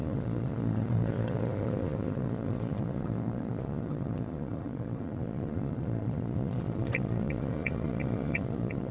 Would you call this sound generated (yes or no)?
yes